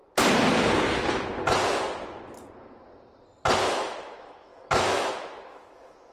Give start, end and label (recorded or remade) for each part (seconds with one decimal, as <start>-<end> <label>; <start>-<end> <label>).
0.0-3.7 recorded; 3.7-6.1 remade